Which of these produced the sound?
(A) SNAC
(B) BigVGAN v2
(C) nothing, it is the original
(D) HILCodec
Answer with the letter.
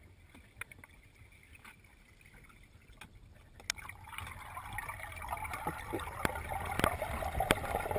C